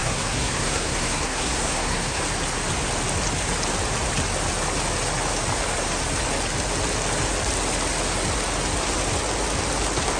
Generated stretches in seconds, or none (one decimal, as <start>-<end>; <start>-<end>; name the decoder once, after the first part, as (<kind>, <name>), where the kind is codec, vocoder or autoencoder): 0.0-2.2 (codec, SNAC)